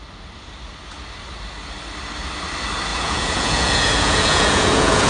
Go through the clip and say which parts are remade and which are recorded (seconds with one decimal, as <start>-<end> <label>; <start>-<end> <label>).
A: 0.0-2.9 recorded; 2.9-5.1 remade